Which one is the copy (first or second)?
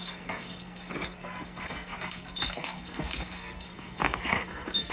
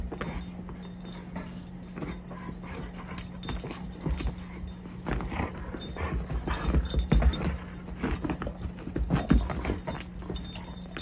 first